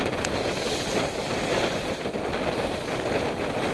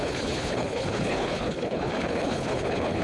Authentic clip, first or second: first